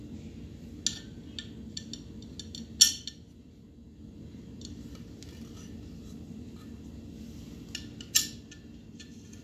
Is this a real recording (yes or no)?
yes